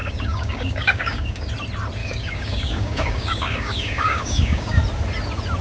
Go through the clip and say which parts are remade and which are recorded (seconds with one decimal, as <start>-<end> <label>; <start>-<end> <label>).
0.0-1.5 remade; 1.5-2.0 recorded; 2.0-4.8 remade; 4.8-5.6 recorded

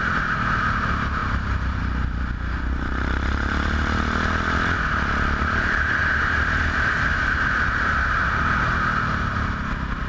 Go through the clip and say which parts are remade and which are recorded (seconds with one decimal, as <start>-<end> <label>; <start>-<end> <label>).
0.0-10.1 recorded

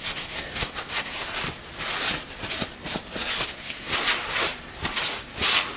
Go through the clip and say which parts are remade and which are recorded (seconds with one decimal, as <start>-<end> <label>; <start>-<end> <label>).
0.0-1.1 remade; 1.1-3.5 recorded; 3.5-3.9 remade; 3.9-5.8 recorded

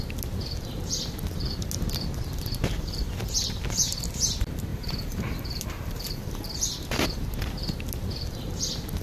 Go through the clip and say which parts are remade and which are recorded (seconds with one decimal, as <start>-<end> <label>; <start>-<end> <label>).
0.0-4.7 recorded; 4.7-6.2 remade; 6.2-9.0 recorded

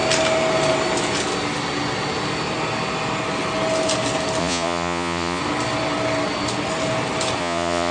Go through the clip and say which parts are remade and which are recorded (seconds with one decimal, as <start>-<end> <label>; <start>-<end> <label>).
0.0-4.4 recorded; 4.4-5.4 remade; 5.4-7.4 recorded; 7.4-7.9 remade